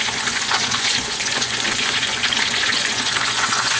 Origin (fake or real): fake